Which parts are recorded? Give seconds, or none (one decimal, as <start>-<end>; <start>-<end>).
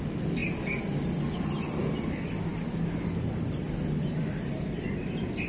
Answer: 0.0-5.5